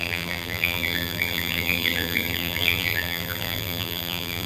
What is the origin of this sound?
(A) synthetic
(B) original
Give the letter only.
A